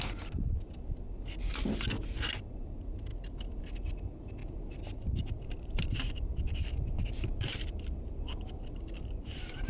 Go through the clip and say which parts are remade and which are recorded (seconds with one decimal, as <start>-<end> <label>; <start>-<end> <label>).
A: 0.0-4.4 recorded; 4.4-9.7 remade